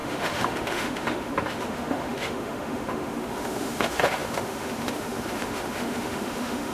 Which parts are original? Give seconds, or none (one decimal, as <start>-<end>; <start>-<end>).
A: none